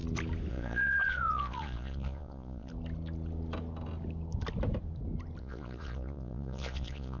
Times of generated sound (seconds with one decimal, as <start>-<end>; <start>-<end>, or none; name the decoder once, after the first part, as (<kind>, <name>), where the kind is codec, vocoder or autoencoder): 0.5-2.7 (vocoder, Vocos); 5.4-7.2